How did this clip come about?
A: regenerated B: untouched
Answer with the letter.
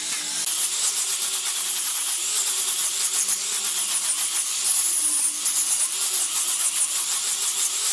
B